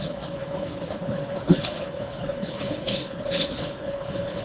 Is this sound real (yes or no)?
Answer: no